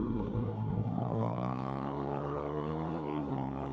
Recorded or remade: remade